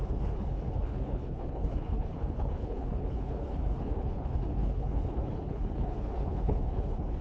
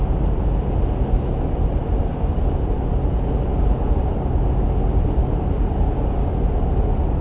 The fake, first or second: first